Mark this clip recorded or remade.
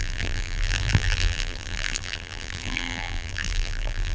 remade